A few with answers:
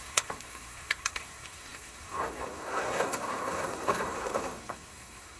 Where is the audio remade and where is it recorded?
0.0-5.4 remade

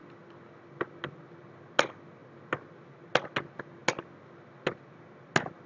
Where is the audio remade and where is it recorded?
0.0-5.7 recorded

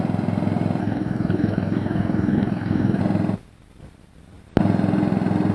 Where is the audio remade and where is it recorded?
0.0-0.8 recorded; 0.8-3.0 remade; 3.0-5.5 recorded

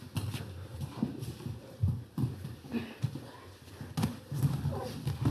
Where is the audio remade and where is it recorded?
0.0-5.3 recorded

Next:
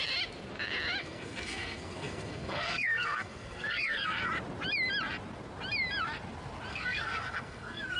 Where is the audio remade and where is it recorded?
0.0-1.0 recorded; 1.0-4.3 remade; 4.3-6.7 recorded; 6.7-8.0 remade

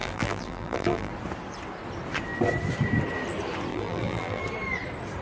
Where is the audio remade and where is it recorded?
0.0-1.1 remade; 1.1-3.7 recorded; 3.7-4.4 remade; 4.4-5.2 recorded

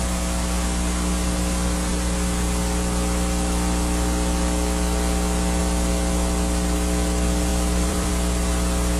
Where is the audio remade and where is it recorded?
0.0-7.5 recorded; 7.5-8.1 remade; 8.1-9.0 recorded

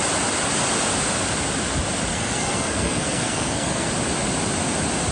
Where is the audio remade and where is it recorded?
0.0-2.1 recorded; 2.1-3.9 remade; 3.9-5.1 recorded